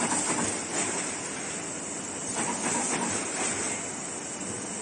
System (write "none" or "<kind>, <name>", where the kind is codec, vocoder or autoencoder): none